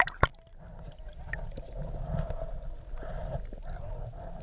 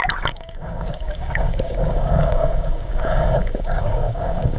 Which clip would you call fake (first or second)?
second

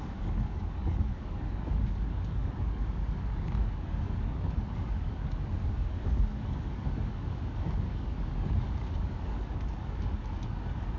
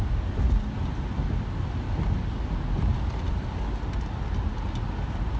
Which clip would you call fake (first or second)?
first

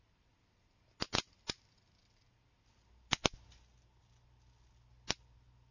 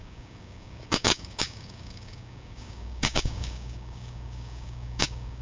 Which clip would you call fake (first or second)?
second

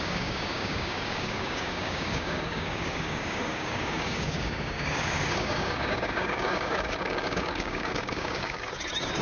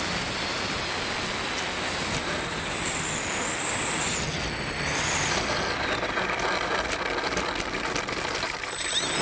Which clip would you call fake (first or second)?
first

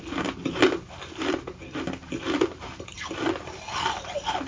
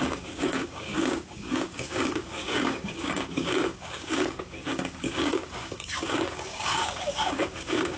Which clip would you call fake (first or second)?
second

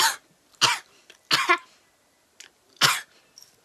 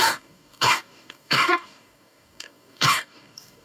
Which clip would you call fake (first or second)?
second